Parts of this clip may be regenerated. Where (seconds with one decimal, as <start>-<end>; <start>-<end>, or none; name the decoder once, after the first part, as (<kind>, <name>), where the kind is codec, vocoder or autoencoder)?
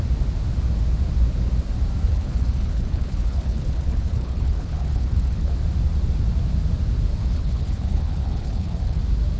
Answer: 2.1-5.5 (codec, HILCodec); 7.2-9.0